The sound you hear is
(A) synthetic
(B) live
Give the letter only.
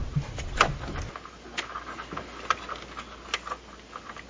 B